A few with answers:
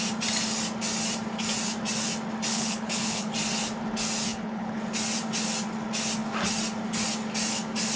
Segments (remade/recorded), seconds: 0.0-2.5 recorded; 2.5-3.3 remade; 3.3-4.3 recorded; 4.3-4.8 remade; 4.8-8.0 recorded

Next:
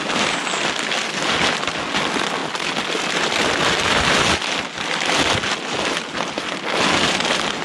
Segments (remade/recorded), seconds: 0.0-7.6 recorded

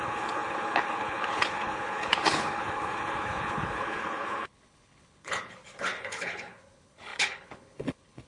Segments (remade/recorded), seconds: 0.0-8.3 remade